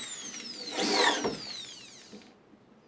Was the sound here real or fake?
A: real